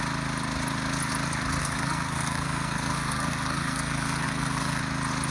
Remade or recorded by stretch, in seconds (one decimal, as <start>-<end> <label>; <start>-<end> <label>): 0.0-1.6 recorded; 1.6-4.8 remade; 4.8-5.3 recorded